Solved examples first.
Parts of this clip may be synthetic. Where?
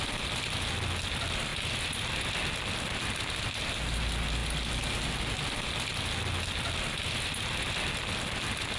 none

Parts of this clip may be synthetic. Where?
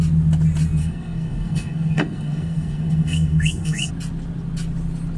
0.8-3.9 (codec, SNAC)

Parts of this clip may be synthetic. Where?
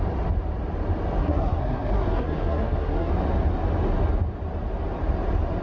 1.2-3.1 (codec, SNAC)